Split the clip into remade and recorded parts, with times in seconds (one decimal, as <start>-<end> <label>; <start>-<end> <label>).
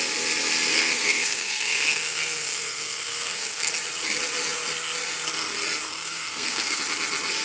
0.0-0.7 recorded; 0.7-3.7 remade; 3.7-5.9 recorded; 5.9-6.8 remade; 6.8-7.4 recorded